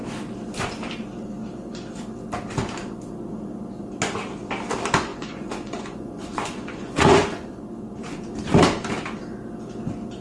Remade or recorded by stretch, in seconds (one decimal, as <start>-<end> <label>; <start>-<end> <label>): 0.0-5.1 recorded; 5.1-7.6 remade; 7.6-10.2 recorded